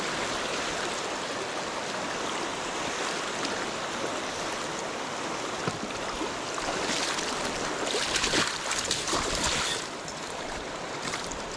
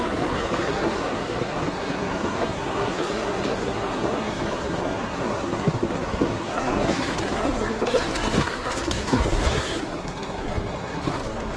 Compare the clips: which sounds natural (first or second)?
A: first